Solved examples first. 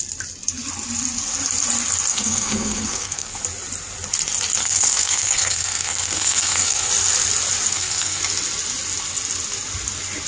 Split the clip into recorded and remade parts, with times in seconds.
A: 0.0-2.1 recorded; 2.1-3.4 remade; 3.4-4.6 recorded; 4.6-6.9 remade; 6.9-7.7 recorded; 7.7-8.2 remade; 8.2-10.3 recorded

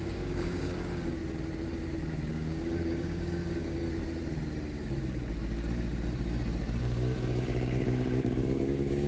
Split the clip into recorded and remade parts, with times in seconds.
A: 0.0-1.2 remade; 1.2-2.3 recorded; 2.3-3.8 remade; 3.8-6.8 recorded; 6.8-9.1 remade

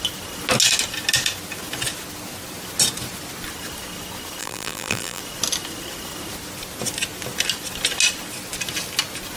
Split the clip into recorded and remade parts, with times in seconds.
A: 0.0-4.4 recorded; 4.4-5.2 remade; 5.2-9.4 recorded